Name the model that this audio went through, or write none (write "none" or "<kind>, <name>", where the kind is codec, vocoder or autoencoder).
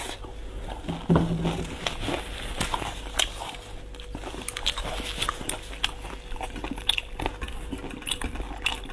none